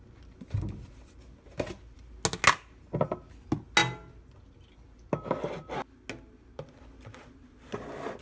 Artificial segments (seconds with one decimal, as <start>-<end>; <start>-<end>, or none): none